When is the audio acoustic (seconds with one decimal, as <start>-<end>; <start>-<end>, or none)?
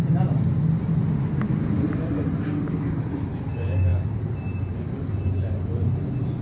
0.0-6.4